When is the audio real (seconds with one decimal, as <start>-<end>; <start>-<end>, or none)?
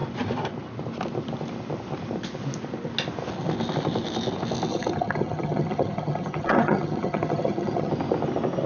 0.0-4.7; 7.9-8.7